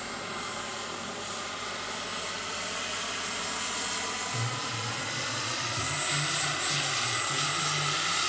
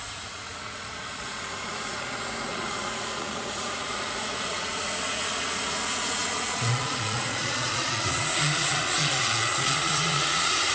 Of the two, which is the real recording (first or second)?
first